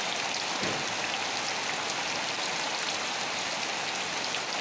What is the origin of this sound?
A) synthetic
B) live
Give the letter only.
B